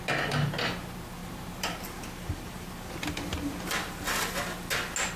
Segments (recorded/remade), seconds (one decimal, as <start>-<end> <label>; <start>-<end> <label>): 0.0-1.2 recorded; 1.2-4.3 remade; 4.3-5.2 recorded